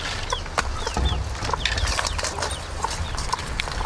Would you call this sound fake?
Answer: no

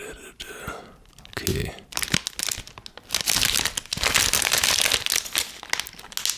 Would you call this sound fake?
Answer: no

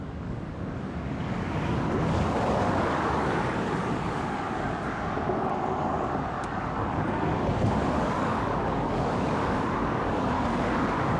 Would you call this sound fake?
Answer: yes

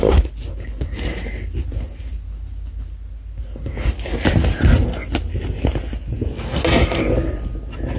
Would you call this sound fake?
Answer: no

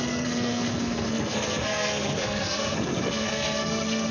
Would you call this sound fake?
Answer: yes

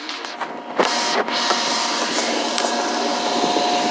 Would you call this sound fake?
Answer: no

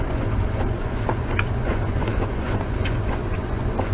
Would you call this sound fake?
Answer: yes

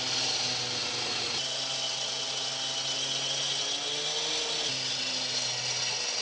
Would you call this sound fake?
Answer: no